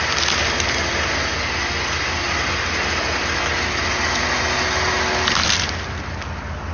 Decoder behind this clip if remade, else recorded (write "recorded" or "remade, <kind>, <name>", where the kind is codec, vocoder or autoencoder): recorded